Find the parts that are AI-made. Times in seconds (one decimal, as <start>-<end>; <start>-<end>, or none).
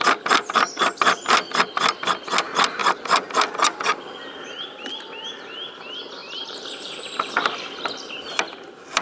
6.2-7.3